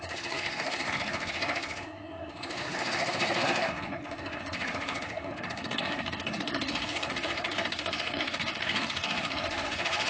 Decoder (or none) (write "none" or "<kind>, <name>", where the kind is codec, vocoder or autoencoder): codec, SNAC